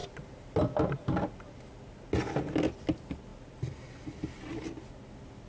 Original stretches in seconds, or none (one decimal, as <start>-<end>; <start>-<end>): 0.0-5.5